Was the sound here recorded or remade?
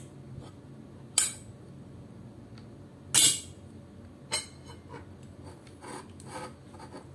recorded